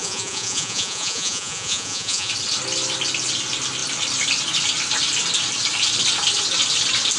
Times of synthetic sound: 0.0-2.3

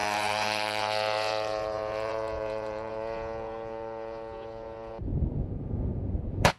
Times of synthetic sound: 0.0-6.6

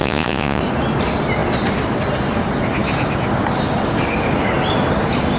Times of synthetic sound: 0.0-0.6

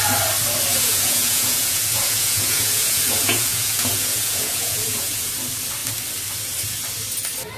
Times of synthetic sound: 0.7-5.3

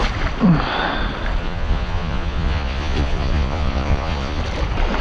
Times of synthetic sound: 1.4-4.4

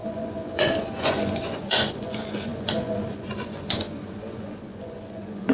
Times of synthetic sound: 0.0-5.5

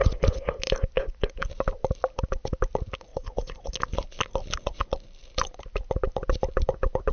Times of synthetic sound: 0.0-0.5; 3.1-3.7